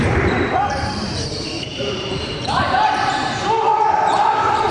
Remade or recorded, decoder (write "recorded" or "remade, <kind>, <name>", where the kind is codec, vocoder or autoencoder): remade, vocoder, BigVGAN v2